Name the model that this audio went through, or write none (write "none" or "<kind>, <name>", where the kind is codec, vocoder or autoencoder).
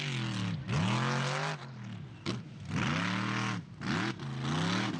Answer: none